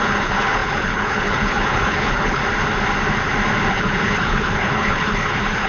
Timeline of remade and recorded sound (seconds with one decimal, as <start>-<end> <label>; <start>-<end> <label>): 0.0-2.4 remade; 2.4-3.7 recorded; 3.7-5.7 remade